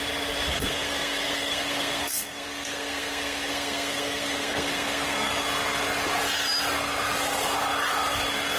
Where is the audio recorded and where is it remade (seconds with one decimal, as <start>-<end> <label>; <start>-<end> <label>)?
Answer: 0.0-0.5 recorded; 0.5-5.3 remade; 5.3-8.6 recorded